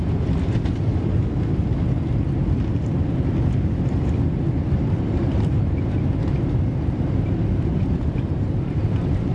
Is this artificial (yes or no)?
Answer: no